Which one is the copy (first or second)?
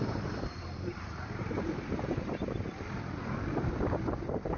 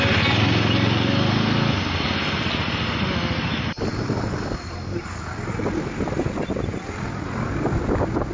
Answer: first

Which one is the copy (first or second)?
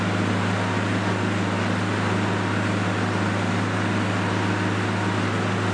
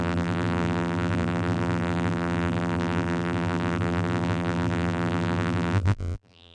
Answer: second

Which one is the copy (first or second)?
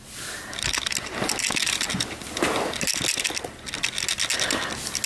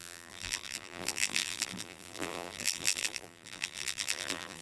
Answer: second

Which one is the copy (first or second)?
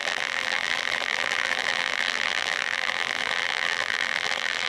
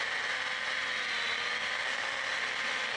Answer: first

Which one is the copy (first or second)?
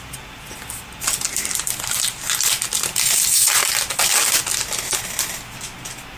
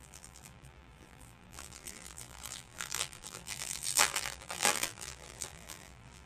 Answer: second